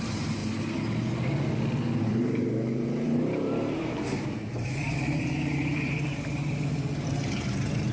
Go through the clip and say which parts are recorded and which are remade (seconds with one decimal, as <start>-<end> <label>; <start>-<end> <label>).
0.0-0.4 remade; 0.4-2.0 recorded; 2.0-7.9 remade